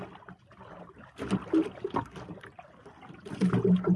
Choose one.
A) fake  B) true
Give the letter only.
B